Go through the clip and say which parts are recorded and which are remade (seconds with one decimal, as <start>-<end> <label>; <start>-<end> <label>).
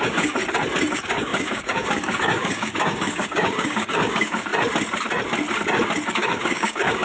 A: 0.0-0.4 remade; 0.4-0.9 recorded; 0.9-4.5 remade; 4.5-6.1 recorded; 6.1-7.0 remade